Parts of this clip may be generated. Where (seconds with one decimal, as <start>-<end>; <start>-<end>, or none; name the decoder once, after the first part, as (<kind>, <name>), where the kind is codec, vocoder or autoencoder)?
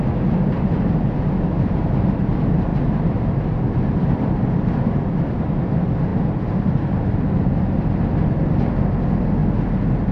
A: 2.7-4.6 (vocoder, BigVGAN v2); 6.1-7.1